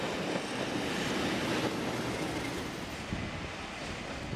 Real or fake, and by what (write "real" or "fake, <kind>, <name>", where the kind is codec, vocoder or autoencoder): real